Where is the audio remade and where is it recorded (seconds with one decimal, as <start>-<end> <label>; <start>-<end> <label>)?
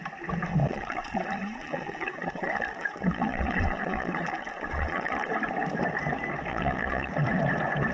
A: 0.0-0.6 recorded; 0.6-5.3 remade; 5.3-6.5 recorded; 6.5-7.1 remade; 7.1-7.9 recorded